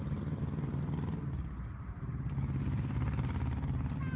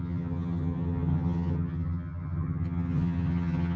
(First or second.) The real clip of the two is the first